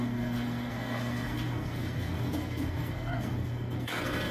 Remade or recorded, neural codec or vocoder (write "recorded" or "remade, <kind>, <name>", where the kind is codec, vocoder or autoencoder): remade, codec, SNAC